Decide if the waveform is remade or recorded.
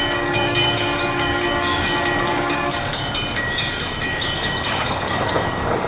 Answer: remade